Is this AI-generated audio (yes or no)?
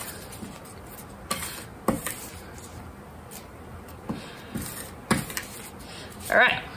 no